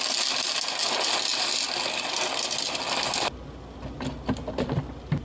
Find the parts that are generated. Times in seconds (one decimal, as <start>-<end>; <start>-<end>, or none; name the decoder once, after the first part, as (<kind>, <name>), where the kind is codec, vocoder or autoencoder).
none